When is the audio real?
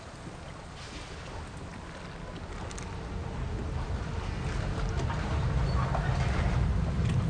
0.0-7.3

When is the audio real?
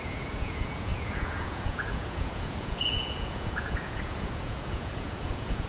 none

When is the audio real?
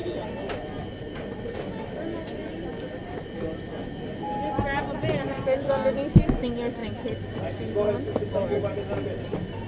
0.0-9.7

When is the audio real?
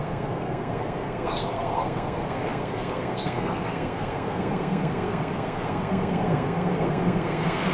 none